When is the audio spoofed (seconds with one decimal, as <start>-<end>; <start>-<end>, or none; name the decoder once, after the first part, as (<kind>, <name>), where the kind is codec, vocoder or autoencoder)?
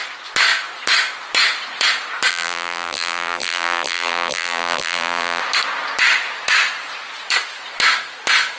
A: 2.3-5.4 (vocoder, BigVGAN v2)